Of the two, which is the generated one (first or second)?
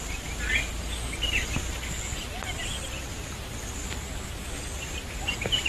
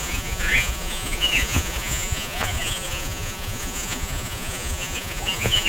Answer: second